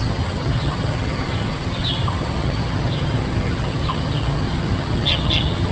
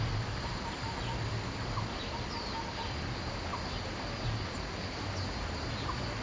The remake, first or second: first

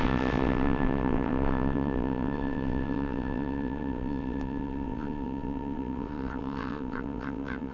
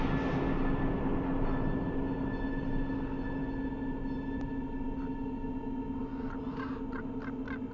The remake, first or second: first